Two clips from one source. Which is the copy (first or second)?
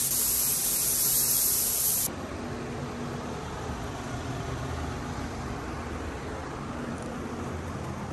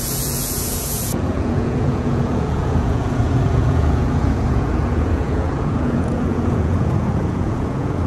second